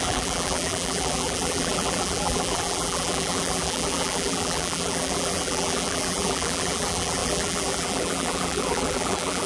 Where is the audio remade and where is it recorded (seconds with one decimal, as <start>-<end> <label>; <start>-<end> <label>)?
0.0-9.5 remade